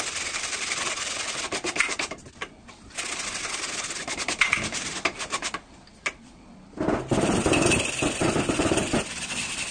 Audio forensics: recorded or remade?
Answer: recorded